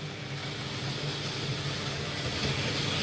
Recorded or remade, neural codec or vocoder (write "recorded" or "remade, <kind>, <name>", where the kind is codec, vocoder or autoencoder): recorded